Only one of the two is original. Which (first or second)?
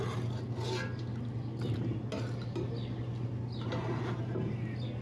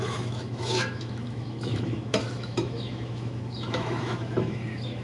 first